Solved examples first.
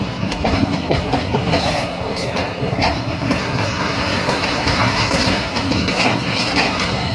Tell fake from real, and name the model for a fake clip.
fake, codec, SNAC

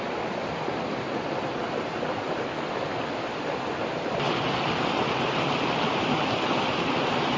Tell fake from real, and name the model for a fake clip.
real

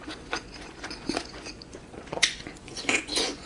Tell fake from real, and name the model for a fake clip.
fake, vocoder, Vocos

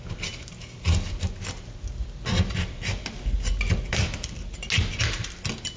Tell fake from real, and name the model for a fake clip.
real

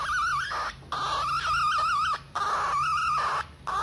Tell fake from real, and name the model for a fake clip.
real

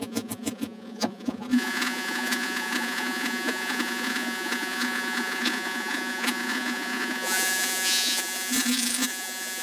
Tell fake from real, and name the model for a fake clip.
fake, vocoder, Vocos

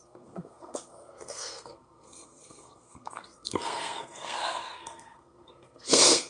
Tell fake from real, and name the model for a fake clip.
fake, codec, SNAC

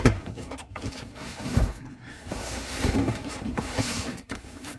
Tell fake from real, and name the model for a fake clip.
fake, codec, SNAC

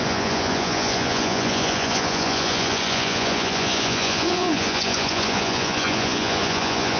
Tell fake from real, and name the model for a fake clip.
fake, vocoder, Vocos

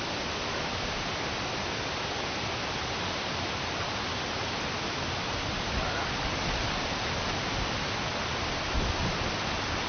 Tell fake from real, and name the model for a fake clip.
real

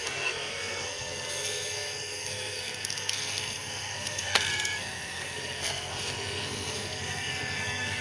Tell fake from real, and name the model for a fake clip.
fake, codec, SNAC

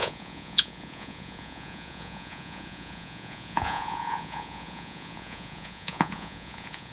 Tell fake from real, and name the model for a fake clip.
fake, vocoder, Vocos